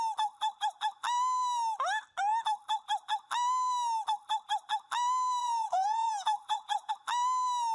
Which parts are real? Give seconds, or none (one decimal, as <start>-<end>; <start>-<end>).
0.0-5.4; 6.9-7.7